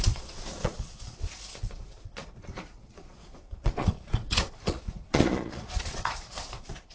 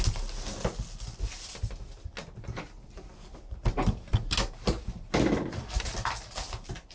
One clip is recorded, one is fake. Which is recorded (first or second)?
second